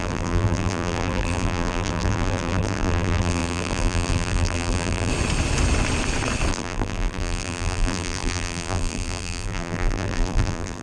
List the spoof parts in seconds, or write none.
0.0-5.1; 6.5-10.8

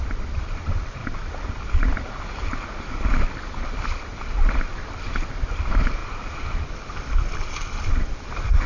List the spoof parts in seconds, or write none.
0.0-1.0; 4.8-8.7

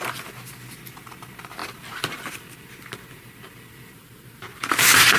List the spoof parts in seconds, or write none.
4.0-5.2

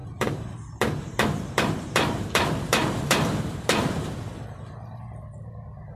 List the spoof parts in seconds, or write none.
0.0-3.6